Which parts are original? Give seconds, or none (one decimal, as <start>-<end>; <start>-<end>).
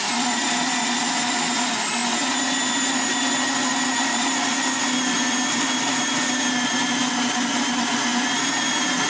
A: 0.0-9.1